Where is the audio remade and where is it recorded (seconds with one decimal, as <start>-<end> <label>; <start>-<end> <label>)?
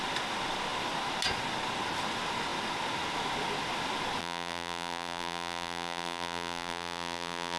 0.0-4.2 recorded; 4.2-7.6 remade